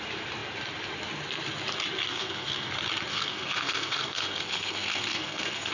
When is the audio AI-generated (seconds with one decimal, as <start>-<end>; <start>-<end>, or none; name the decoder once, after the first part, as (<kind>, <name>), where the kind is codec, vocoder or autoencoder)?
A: 2.1-2.7 (codec, SNAC); 3.1-5.7